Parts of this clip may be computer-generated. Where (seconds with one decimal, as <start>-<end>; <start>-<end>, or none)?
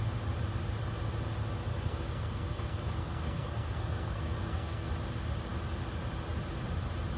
1.7-4.9